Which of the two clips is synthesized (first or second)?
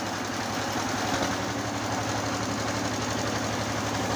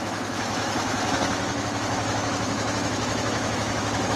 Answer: second